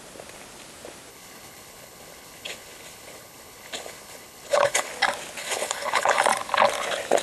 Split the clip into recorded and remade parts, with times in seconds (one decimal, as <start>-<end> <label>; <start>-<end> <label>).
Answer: 0.0-1.1 recorded; 1.1-4.9 remade; 4.9-5.4 recorded; 5.4-6.2 remade; 6.2-7.2 recorded